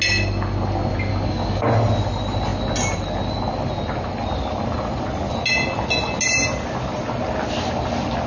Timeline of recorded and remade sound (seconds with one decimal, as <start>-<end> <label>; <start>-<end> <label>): 0.0-1.1 recorded; 1.1-1.7 remade; 1.7-8.3 recorded